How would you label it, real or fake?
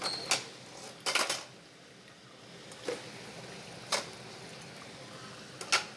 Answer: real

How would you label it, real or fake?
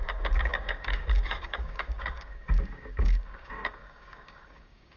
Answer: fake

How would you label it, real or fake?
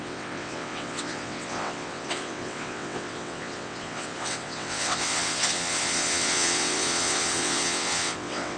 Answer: fake